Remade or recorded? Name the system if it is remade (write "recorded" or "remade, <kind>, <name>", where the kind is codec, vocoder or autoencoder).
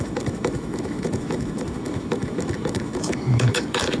remade, autoencoder, DAC-VAE